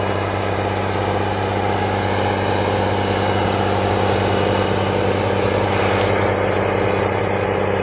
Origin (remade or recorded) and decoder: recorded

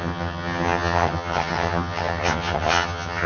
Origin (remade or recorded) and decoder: remade, vocoder, HiFi-GAN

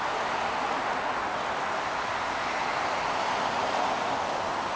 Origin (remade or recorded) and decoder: recorded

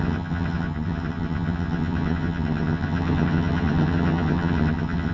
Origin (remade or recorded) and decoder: remade, vocoder, HiFi-GAN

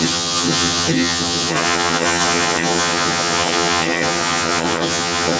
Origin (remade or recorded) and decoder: remade, vocoder, HiFi-GAN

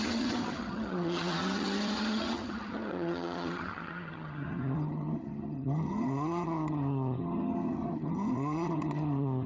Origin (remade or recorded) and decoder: remade, vocoder, HiFi-GAN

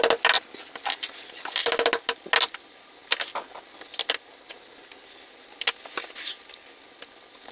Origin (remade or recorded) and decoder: recorded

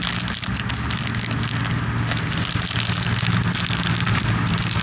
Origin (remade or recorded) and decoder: recorded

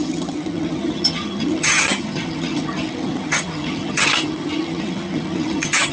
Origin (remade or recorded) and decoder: remade, vocoder, HiFi-GAN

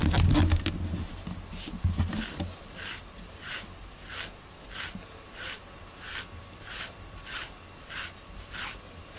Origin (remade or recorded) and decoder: recorded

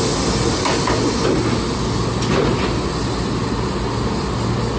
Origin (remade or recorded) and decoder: recorded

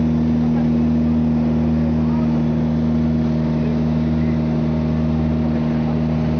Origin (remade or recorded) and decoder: recorded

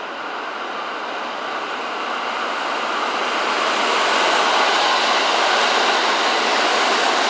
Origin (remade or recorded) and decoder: recorded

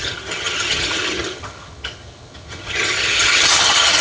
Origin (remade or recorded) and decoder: remade, vocoder, HiFi-GAN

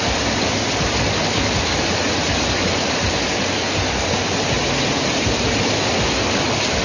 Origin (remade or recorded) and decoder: recorded